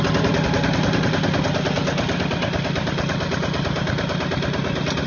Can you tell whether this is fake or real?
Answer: real